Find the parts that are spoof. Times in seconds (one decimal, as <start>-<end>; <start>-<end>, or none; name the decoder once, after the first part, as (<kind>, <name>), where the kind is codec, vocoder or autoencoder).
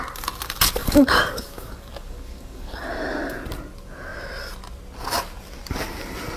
0.8-2.8 (codec, DAC)